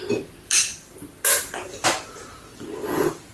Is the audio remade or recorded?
recorded